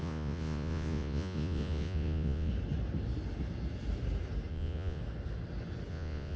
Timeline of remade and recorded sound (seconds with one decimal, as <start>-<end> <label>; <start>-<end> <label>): 0.0-2.5 remade; 2.5-4.5 recorded; 4.5-5.0 remade; 5.0-5.9 recorded; 5.9-6.4 remade